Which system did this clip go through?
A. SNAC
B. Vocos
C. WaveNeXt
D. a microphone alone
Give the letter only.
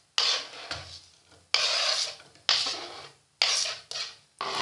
D